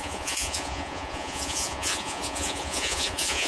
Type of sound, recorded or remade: remade